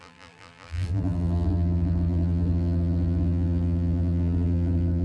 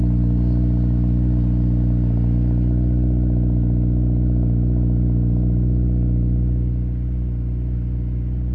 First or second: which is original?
second